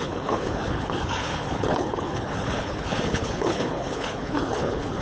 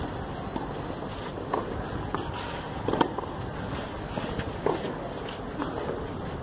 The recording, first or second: second